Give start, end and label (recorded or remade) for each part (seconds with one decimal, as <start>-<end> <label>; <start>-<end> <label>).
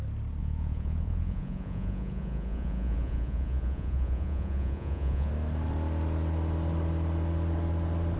0.0-0.4 recorded; 0.4-5.3 remade; 5.3-8.2 recorded